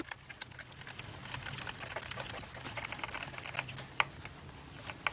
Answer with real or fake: real